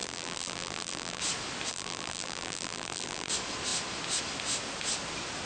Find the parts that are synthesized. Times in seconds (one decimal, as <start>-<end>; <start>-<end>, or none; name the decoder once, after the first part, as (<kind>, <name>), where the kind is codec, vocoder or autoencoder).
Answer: 0.0-1.2 (vocoder, BigVGAN v2); 1.7-3.3